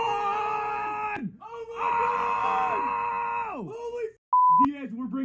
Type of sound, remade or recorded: recorded